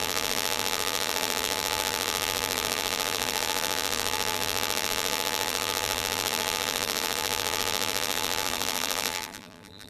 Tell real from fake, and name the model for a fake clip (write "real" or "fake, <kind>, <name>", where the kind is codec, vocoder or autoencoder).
fake, vocoder, BigVGAN v2